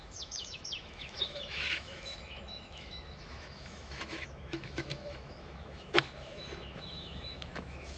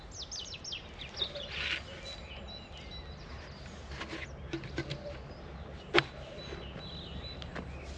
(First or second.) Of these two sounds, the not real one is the first